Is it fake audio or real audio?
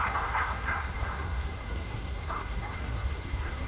fake